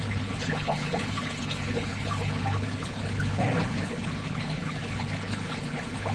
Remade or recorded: remade